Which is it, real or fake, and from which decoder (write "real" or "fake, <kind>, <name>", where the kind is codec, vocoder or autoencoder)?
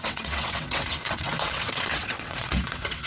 fake, vocoder, WaveNeXt